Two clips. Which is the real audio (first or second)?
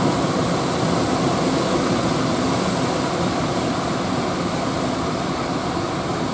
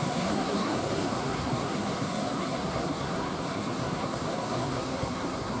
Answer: first